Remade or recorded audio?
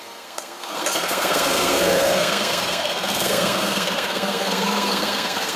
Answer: remade